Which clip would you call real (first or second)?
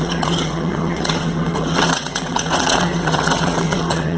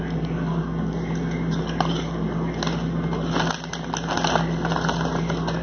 second